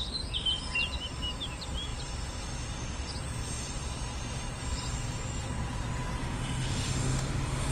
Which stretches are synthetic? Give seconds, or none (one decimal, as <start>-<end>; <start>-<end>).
6.2-7.7